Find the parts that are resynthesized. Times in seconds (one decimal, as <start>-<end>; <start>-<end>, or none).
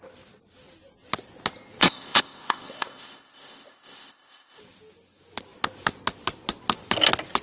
1.8-4.6